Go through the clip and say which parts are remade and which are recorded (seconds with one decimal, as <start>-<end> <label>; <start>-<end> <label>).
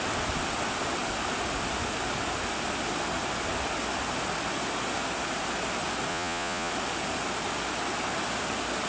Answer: 0.0-6.1 recorded; 6.1-6.7 remade; 6.7-8.9 recorded